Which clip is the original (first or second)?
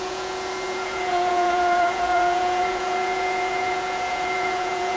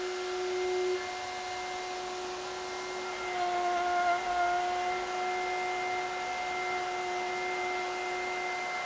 second